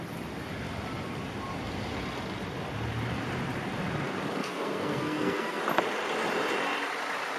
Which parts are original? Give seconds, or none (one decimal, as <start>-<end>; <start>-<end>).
0.0-4.4; 5.6-7.4